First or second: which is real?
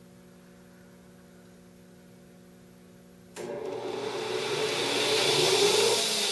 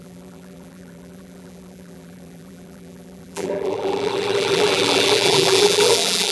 first